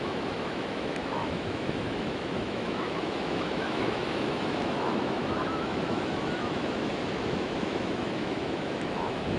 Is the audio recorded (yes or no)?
no